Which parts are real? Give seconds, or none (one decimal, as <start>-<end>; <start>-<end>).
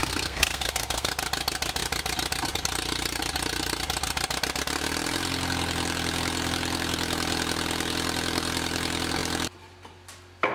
1.1-10.5